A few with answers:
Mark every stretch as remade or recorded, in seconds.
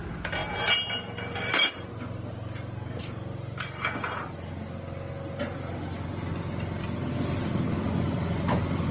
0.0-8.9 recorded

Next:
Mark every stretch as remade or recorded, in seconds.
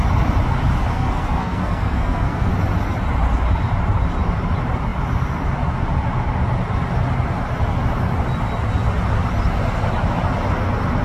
0.0-0.9 recorded; 0.9-2.5 remade; 2.5-11.0 recorded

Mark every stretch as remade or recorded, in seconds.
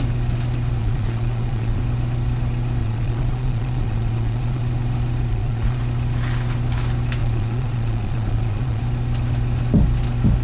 0.0-0.8 recorded; 0.8-1.8 remade; 1.8-2.8 recorded; 2.8-4.6 remade; 4.6-5.3 recorded; 5.3-5.8 remade; 5.8-7.2 recorded; 7.2-8.8 remade; 8.8-10.4 recorded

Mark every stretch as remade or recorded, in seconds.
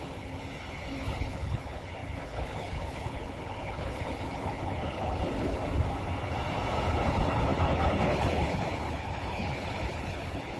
0.0-5.6 remade; 5.6-6.9 recorded; 6.9-10.6 remade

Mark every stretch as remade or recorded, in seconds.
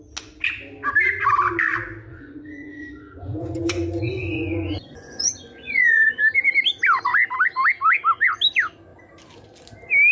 0.0-2.1 recorded; 2.1-6.2 remade; 6.2-10.1 recorded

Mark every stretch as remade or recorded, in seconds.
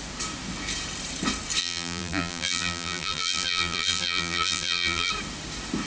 0.0-1.6 recorded; 1.6-5.1 remade; 5.1-5.9 recorded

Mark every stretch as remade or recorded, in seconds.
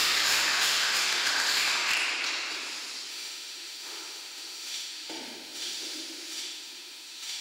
0.0-1.9 remade; 1.9-3.1 recorded; 3.1-7.4 remade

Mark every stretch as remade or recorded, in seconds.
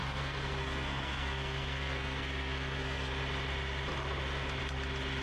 0.0-3.1 remade; 3.1-5.2 recorded